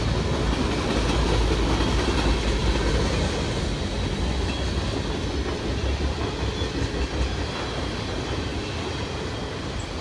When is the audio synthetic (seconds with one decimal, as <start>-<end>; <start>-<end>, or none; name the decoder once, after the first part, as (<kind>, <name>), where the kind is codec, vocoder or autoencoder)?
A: none

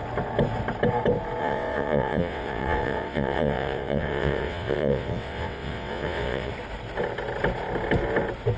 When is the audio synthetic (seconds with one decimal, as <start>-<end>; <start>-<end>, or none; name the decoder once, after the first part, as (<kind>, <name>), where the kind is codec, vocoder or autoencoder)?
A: 1.4-6.5 (vocoder, WaveNeXt)

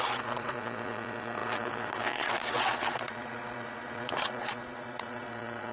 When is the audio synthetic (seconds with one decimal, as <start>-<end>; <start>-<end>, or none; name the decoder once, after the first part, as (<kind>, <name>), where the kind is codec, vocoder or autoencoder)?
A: 0.0-5.7 (vocoder, Vocos)

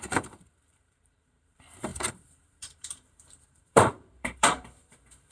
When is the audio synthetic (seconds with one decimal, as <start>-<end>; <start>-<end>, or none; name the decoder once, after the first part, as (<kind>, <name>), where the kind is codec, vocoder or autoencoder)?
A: 0.0-5.3 (vocoder, BigVGAN v2)

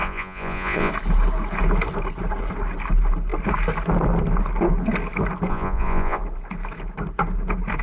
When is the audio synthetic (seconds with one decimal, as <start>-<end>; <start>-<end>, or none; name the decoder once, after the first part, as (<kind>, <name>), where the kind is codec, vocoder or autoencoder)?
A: 0.0-0.9 (vocoder, Vocos); 5.5-6.2